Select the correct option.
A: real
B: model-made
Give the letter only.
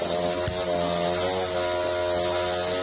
A